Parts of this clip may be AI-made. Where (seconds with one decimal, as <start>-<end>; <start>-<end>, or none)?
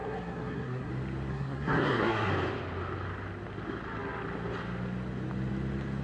0.0-0.9; 1.3-2.3